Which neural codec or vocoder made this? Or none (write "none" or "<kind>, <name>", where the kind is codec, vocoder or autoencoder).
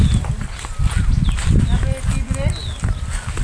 none